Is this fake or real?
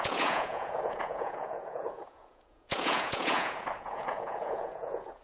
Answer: fake